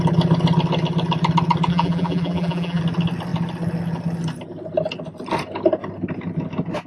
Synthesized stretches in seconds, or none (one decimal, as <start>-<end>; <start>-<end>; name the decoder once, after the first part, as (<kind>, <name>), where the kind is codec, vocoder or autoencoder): 1.7-2.8 (vocoder, BigVGAN v2)